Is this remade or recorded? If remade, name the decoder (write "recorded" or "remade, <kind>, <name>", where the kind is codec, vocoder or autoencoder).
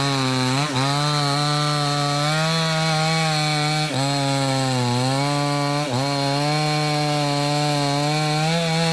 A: recorded